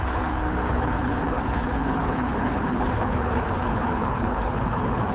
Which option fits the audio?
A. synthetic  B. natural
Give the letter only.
A